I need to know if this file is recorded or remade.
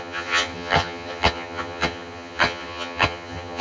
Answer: remade